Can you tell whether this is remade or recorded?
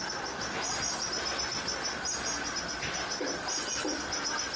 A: remade